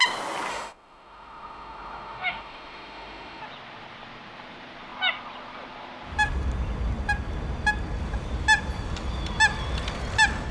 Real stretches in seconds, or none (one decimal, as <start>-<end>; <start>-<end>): 0.0-0.5; 3.4-10.5